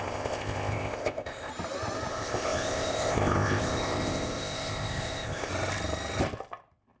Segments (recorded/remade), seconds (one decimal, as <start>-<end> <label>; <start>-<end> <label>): 0.0-1.5 remade; 1.5-2.1 recorded; 2.1-5.5 remade; 5.5-7.0 recorded